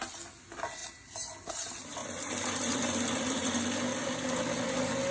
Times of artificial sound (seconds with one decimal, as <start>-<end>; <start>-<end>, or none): none